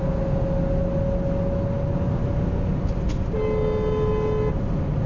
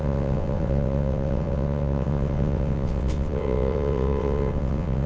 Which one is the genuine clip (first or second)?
first